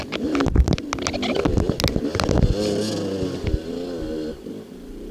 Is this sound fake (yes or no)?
no